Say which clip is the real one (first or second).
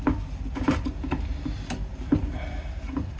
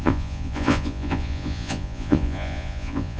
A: first